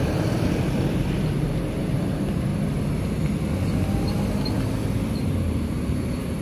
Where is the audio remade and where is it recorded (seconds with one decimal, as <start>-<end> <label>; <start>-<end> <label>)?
0.0-2.5 remade; 2.5-6.4 recorded